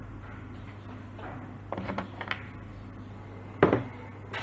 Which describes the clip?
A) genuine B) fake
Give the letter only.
A